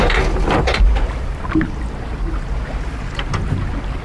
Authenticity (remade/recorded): recorded